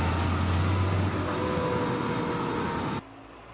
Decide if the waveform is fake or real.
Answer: real